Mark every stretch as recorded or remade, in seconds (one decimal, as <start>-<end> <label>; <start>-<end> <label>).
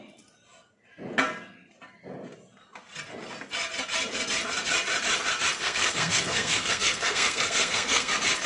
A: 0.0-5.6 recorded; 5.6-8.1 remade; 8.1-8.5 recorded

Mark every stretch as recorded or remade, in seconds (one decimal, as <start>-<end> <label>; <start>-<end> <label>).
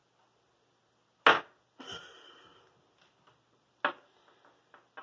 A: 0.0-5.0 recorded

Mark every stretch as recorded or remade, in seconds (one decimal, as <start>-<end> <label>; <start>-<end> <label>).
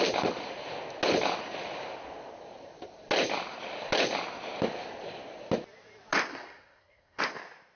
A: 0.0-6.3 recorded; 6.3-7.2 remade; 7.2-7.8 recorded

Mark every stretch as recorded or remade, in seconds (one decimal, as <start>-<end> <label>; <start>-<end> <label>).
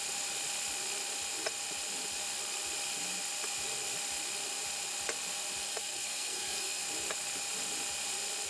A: 0.0-5.8 recorded; 5.8-6.8 remade; 6.8-8.5 recorded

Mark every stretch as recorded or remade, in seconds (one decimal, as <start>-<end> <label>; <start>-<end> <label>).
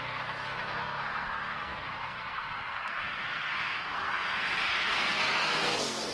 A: 0.0-6.1 remade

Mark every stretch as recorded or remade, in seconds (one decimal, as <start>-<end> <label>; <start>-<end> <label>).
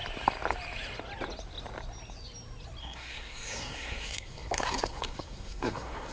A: 0.0-2.8 recorded; 2.8-6.1 remade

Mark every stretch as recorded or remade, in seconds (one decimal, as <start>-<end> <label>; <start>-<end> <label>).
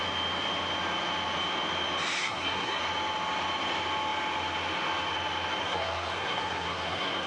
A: 0.0-2.2 recorded; 2.2-2.8 remade; 2.8-5.6 recorded; 5.6-7.3 remade